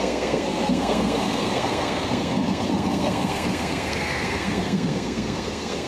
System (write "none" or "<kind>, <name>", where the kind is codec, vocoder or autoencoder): codec, SNAC